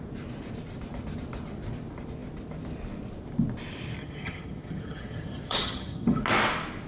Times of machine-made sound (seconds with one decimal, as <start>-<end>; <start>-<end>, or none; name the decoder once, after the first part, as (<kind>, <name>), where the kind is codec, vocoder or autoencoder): 4.0-6.2 (vocoder, HiFi-GAN)